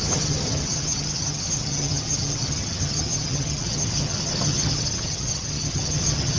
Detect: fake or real fake